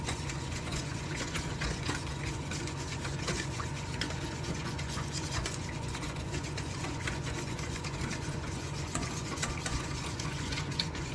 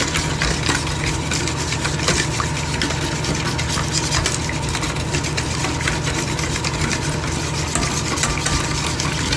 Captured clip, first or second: second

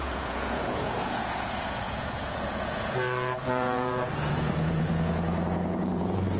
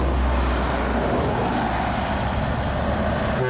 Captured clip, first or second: second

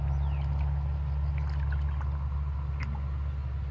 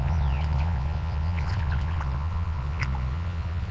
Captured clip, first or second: first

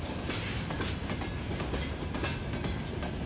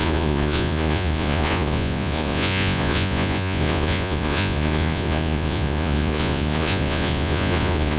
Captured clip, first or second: first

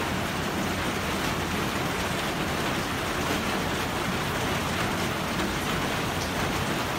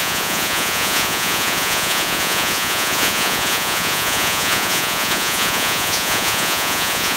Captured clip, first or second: first